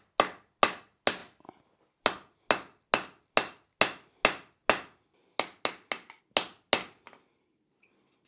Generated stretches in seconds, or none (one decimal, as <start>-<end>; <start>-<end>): none